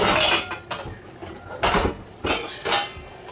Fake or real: real